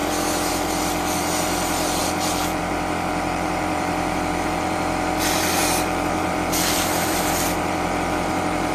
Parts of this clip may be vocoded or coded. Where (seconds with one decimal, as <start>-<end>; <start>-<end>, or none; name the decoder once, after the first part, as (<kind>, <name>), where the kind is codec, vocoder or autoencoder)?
0.5-8.7 (vocoder, BigVGAN v2)